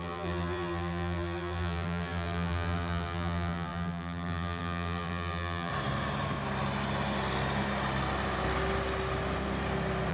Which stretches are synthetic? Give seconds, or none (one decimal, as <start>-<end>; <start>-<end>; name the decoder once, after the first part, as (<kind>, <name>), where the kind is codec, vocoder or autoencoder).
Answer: 0.0-5.7 (vocoder, BigVGAN v2)